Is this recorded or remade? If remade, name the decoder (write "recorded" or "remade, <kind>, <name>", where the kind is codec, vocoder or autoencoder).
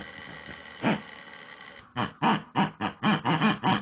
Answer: recorded